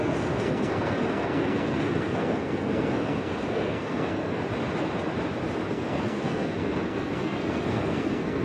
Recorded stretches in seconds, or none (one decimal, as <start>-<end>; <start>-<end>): 4.4-5.7